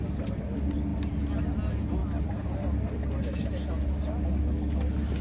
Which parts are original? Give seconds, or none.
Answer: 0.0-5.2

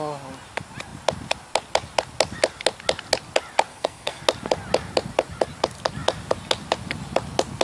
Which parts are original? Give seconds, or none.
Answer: 0.0-3.7; 4.2-7.6